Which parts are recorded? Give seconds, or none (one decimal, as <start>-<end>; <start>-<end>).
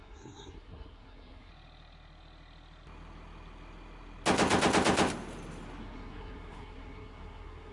1.5-5.8